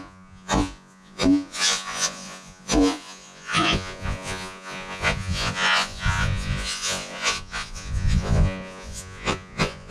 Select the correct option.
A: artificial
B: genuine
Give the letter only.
A